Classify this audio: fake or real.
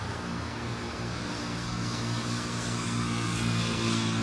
fake